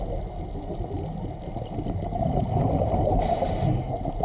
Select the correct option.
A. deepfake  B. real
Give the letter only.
B